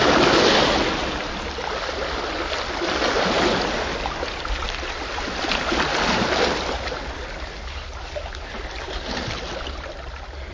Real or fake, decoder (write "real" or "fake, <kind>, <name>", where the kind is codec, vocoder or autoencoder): real